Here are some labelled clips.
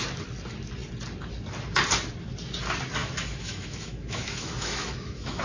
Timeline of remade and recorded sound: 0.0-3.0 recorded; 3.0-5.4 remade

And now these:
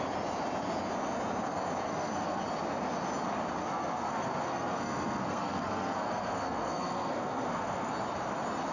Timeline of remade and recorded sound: 0.0-1.9 recorded; 1.9-2.4 remade; 2.4-3.6 recorded; 3.6-7.9 remade; 7.9-8.7 recorded

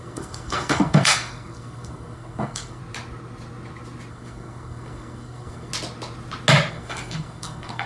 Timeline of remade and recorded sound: 0.0-2.8 remade; 2.8-4.1 recorded; 4.1-5.7 remade; 5.7-6.7 recorded; 6.7-7.9 remade

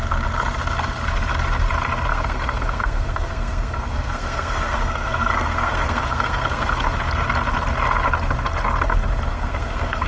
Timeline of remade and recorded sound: 0.0-2.1 recorded; 2.1-6.9 remade; 6.9-9.3 recorded; 9.3-10.1 remade

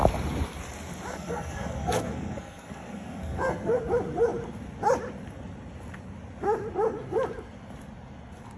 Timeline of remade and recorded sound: 0.0-1.1 recorded; 1.1-3.8 remade; 3.8-8.6 recorded

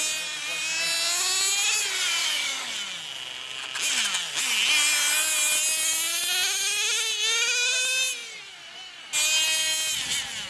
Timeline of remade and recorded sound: 0.0-2.2 recorded; 2.2-2.7 remade; 2.7-10.5 recorded

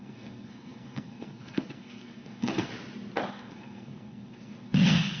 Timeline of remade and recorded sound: 0.0-2.7 remade; 2.7-3.3 recorded; 3.3-5.2 remade

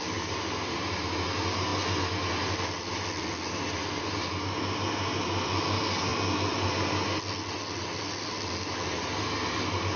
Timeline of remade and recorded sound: 0.0-10.0 recorded